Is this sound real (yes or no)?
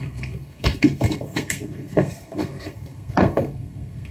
no